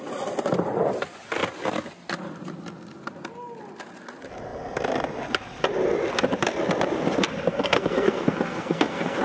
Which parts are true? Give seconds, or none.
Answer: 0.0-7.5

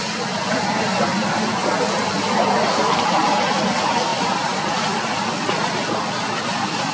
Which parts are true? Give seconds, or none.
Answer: 0.0-4.1; 5.3-6.9

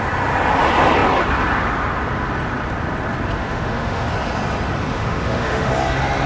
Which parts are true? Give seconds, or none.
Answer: 0.0-3.4; 4.1-4.9; 5.7-6.3

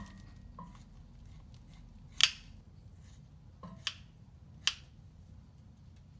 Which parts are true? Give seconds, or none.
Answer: 0.0-6.2

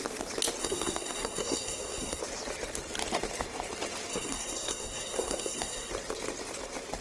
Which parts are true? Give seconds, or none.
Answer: 0.0-0.6; 2.2-4.1; 5.9-7.0

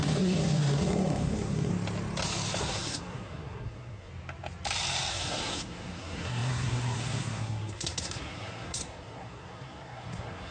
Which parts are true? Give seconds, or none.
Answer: 1.7-2.6; 4.1-5.1